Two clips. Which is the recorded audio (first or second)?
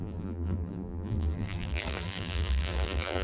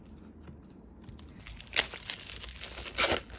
second